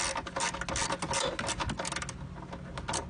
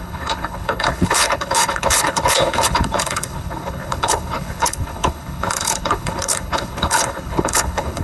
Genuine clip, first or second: first